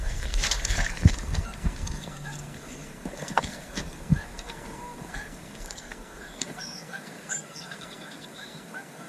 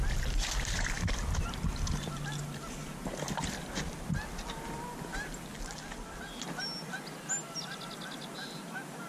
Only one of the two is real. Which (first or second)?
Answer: second